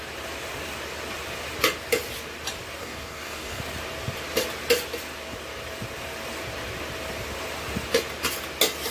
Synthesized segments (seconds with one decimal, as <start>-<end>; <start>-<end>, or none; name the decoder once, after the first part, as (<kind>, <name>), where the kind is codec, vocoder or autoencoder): 2.8-3.6 (codec, DAC)